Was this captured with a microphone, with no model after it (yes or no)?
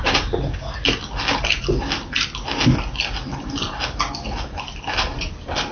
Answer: yes